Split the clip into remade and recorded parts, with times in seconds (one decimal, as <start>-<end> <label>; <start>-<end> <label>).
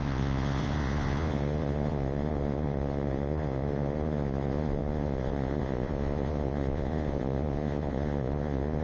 0.0-8.8 remade